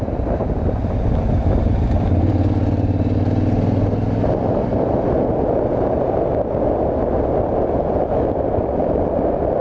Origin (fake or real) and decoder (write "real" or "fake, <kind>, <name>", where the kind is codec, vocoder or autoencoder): real